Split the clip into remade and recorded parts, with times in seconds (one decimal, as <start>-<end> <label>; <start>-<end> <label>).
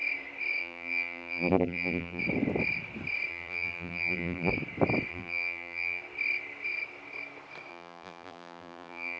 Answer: 0.0-0.6 recorded; 0.6-2.2 remade; 2.2-3.3 recorded; 3.3-4.5 remade; 4.5-5.1 recorded; 5.1-6.0 remade; 6.0-7.7 recorded; 7.7-9.2 remade